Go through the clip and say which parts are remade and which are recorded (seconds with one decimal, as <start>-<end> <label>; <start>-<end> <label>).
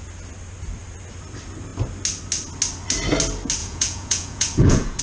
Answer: 0.0-3.6 recorded; 3.6-5.0 remade